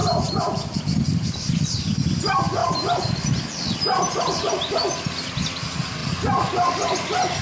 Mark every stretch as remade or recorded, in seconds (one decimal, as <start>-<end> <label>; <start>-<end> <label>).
0.0-7.4 recorded